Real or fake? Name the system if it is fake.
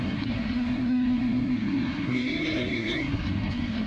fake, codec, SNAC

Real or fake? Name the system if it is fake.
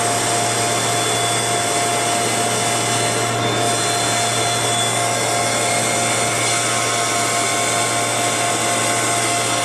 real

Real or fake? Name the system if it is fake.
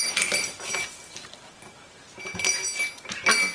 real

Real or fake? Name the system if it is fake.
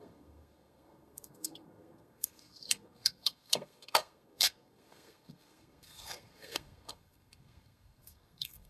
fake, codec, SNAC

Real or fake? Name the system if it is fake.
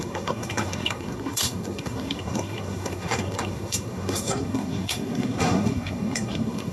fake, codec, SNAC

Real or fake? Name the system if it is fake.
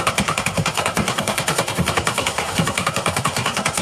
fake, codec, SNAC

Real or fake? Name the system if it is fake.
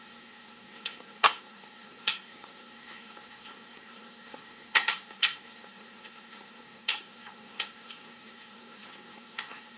fake, codec, SNAC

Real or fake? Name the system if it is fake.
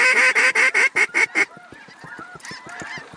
real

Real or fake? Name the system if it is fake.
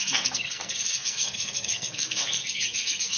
fake, codec, SNAC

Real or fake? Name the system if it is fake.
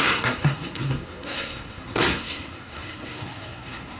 fake, codec, SNAC